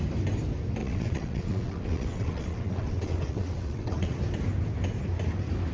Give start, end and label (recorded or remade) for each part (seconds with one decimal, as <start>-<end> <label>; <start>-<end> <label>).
0.0-0.8 recorded; 0.8-4.2 remade; 4.2-5.7 recorded